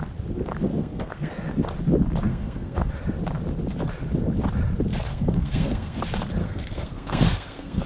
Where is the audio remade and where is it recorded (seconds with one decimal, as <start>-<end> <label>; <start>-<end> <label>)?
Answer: 0.0-0.8 recorded; 0.8-1.3 remade; 1.3-2.3 recorded; 2.3-2.9 remade; 2.9-5.1 recorded; 5.1-6.0 remade; 6.0-6.4 recorded; 6.4-7.9 remade

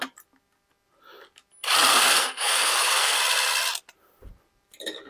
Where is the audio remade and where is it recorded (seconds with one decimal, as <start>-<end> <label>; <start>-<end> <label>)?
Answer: 0.0-1.9 recorded; 1.9-3.2 remade; 3.2-5.1 recorded

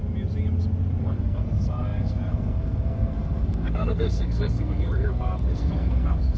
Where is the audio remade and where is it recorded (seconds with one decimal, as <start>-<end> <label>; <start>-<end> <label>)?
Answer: 0.0-1.0 recorded; 1.0-6.4 remade

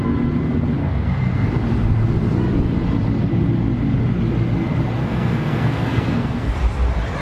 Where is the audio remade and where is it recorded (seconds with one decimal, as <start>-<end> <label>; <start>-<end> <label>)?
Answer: 0.0-0.8 recorded; 0.8-1.5 remade; 1.5-5.0 recorded; 5.0-6.5 remade; 6.5-7.2 recorded